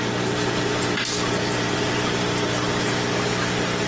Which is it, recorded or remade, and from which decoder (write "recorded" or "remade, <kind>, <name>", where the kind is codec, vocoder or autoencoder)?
recorded